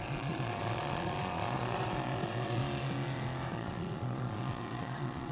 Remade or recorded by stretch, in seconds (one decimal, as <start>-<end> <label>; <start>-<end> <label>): 0.0-2.6 remade; 2.6-3.5 recorded; 3.5-5.3 remade